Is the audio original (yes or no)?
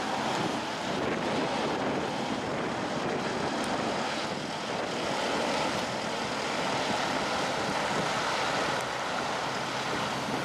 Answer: yes